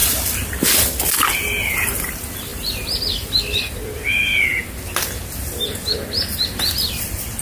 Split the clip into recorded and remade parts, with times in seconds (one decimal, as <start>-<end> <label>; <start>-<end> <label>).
0.0-2.1 remade; 2.1-7.4 recorded